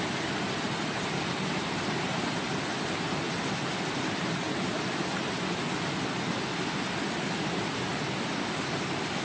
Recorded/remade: recorded